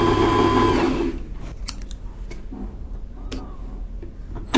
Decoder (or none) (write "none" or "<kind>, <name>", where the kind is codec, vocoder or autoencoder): none